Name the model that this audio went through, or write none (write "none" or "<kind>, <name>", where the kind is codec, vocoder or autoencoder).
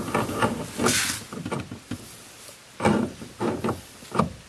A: none